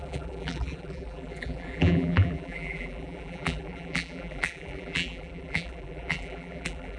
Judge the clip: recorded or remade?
remade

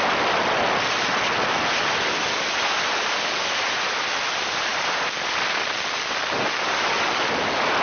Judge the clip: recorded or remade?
recorded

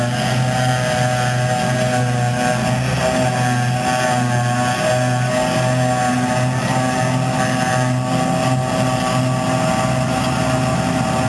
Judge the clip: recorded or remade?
recorded